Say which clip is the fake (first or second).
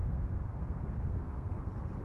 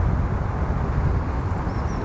first